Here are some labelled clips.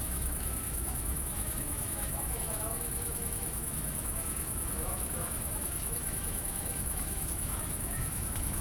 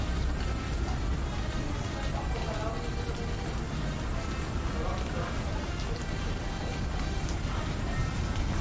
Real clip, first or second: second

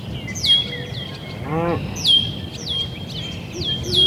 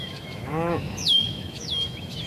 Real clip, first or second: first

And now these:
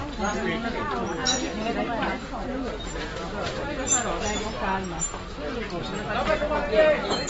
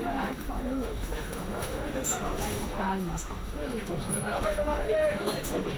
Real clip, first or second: first